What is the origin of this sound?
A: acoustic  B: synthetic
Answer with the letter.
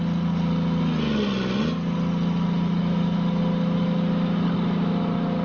A